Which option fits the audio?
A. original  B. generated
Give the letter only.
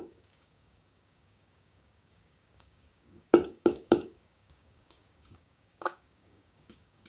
B